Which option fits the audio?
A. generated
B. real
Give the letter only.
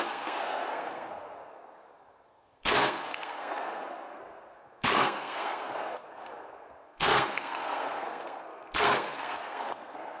A